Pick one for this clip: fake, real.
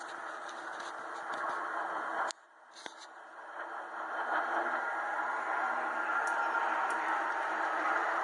real